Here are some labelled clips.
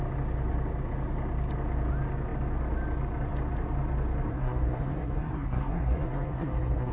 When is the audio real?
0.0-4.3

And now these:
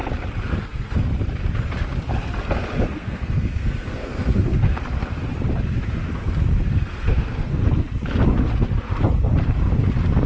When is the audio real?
0.0-0.6; 1.1-2.8; 4.8-6.7; 7.6-10.3